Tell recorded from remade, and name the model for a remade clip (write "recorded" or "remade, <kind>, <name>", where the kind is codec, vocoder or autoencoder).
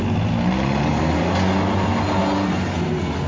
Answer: recorded